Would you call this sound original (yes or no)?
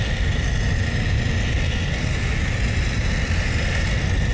yes